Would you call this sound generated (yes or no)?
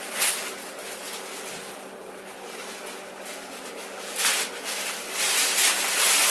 no